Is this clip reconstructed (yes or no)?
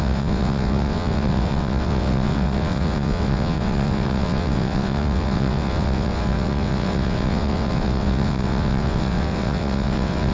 yes